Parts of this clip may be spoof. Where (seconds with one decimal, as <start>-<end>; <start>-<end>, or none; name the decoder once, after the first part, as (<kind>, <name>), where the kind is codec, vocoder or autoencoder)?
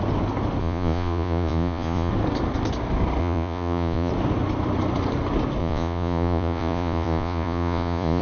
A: 0.6-2.1 (vocoder, Vocos); 3.2-4.1; 5.6-8.2